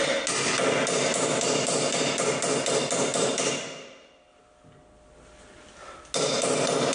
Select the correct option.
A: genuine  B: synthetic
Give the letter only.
A